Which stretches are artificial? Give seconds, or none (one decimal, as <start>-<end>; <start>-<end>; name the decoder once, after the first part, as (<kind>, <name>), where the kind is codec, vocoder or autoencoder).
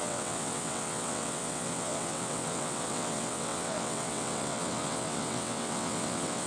0.0-6.5 (vocoder, WaveNeXt)